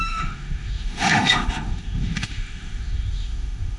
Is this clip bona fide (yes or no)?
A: no